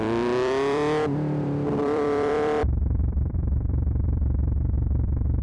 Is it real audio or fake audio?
fake